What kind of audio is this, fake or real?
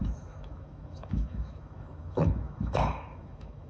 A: fake